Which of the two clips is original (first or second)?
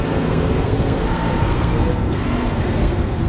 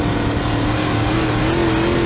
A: second